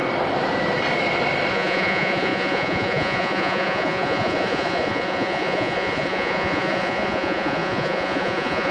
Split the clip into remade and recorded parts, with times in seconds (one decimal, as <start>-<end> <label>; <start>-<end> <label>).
0.0-1.5 recorded; 1.5-8.7 remade